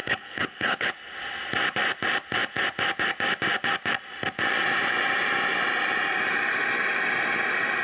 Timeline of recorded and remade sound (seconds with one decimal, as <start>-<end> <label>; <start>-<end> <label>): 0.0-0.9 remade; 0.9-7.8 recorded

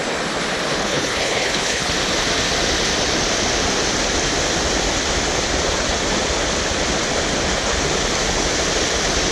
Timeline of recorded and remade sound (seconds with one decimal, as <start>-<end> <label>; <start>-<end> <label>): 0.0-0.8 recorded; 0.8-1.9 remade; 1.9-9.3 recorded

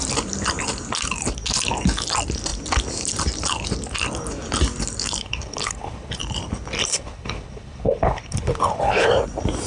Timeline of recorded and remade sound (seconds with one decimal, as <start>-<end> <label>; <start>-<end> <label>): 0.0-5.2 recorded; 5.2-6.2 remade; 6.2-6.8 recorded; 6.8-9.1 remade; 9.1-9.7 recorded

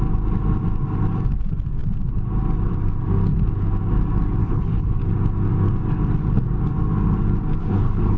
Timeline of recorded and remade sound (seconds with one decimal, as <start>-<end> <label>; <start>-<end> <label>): 0.0-4.4 recorded; 4.4-5.0 remade; 5.0-7.6 recorded; 7.6-8.2 remade

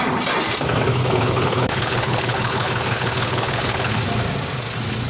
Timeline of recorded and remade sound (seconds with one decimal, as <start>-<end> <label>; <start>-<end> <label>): 0.0-0.9 recorded; 0.9-4.0 remade; 4.0-5.1 recorded